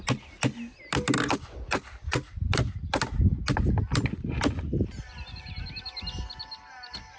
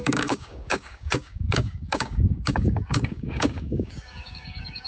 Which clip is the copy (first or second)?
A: second